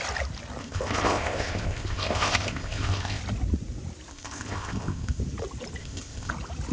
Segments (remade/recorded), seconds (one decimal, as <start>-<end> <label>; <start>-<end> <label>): 0.0-0.6 recorded; 0.6-3.2 remade; 3.2-4.1 recorded; 4.1-5.2 remade; 5.2-5.8 recorded; 5.8-6.3 remade; 6.3-6.7 recorded